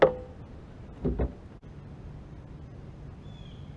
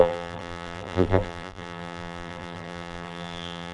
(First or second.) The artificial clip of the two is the second